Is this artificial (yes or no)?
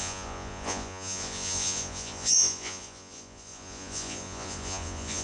yes